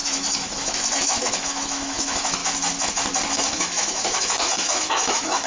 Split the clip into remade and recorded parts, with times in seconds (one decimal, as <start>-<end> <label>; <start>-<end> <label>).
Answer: 0.0-2.4 remade; 2.4-3.3 recorded; 3.3-5.5 remade